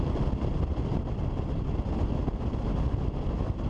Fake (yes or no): no